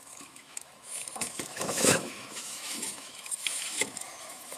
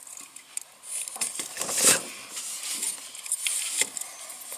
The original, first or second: second